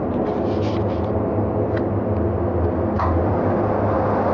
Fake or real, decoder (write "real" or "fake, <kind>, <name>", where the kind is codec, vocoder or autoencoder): real